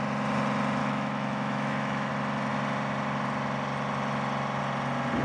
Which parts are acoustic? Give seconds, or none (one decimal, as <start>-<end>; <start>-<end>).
0.0-0.8; 2.1-5.2